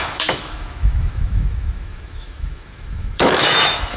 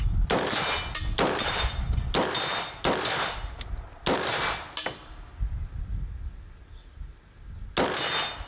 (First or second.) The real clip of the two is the second